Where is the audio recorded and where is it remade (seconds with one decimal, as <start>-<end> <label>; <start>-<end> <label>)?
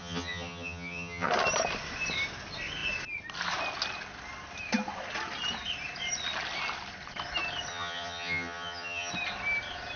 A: 0.0-1.3 remade; 1.3-7.7 recorded; 7.7-9.1 remade; 9.1-10.0 recorded